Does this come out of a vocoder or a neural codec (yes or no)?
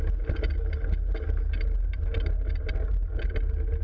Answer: no